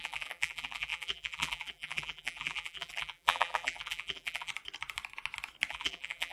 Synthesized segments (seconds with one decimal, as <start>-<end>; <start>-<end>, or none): 0.0-4.5; 5.7-6.3